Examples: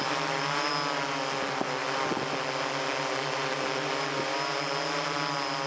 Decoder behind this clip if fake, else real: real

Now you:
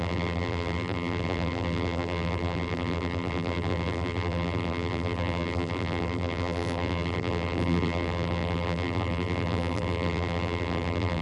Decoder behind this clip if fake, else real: fake, vocoder, BigVGAN v2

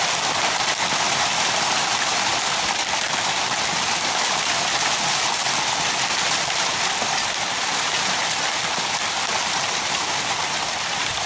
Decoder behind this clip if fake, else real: fake, vocoder, BigVGAN v2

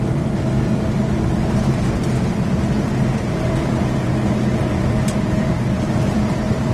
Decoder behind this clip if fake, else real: fake, vocoder, BigVGAN v2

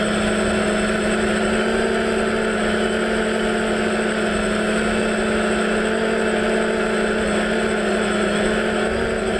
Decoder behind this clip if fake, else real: real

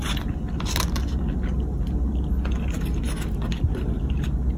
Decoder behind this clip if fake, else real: real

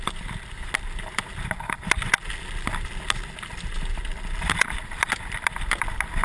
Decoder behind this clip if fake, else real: real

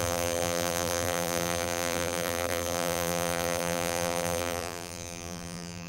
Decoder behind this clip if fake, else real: fake, vocoder, BigVGAN v2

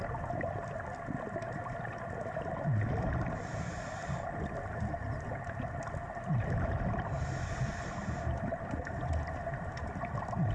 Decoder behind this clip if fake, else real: fake, vocoder, BigVGAN v2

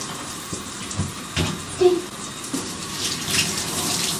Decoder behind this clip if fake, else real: fake, vocoder, BigVGAN v2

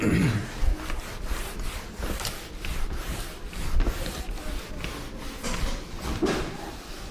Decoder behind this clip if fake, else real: real